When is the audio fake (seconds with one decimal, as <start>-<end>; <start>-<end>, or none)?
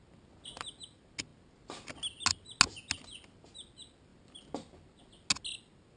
none